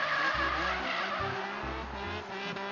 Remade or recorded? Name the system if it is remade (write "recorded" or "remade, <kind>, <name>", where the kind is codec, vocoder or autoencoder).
recorded